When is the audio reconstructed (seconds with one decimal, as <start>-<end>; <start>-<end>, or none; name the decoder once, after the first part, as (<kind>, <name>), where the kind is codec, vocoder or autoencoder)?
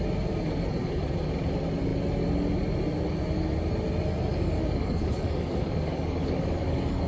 4.3-7.1 (codec, DAC)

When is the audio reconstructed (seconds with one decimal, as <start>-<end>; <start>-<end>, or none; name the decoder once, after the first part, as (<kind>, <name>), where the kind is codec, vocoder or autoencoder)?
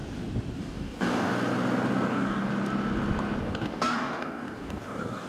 0.6-1.3 (codec, DAC); 2.1-2.5; 3.4-5.3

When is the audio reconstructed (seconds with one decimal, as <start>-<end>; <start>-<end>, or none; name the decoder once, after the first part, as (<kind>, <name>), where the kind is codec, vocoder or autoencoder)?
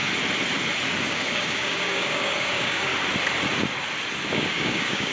1.0-2.9 (codec, DAC); 4.3-5.1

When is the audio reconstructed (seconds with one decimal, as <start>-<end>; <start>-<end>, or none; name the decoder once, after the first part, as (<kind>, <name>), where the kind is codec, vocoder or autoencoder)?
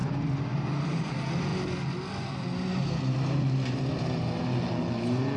none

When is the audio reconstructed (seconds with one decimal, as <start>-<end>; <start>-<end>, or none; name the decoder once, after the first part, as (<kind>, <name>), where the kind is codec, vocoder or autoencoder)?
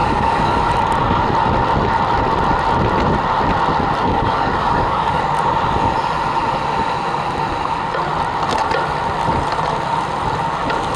0.0-0.7 (codec, DAC); 4.0-5.2